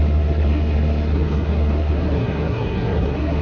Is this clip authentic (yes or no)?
no